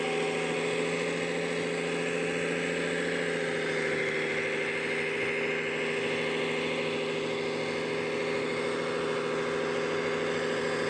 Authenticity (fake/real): real